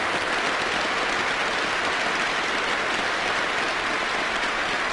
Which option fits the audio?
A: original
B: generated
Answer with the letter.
A